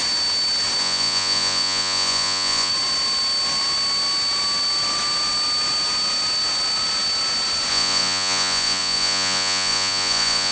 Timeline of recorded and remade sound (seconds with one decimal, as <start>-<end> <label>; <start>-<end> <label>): 0.0-0.8 recorded; 0.8-2.7 remade; 2.7-7.7 recorded; 7.7-10.5 remade